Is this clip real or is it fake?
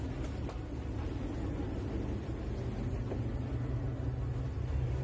real